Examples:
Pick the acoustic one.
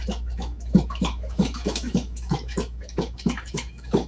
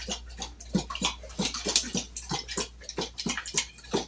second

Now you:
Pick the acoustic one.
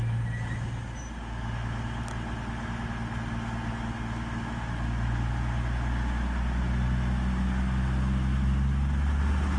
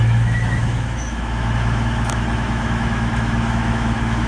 first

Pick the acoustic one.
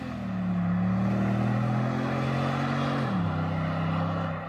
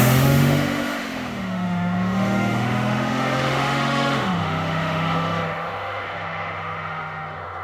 first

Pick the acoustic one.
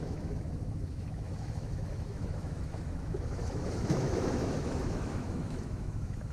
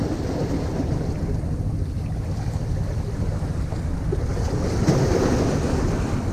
second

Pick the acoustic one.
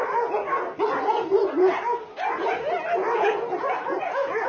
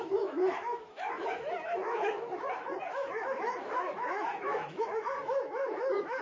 first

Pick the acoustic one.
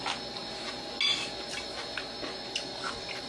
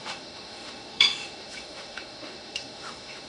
first